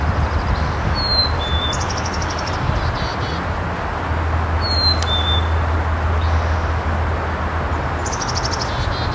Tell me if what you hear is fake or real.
real